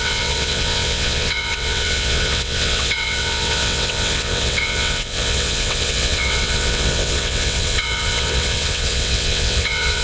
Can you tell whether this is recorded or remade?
remade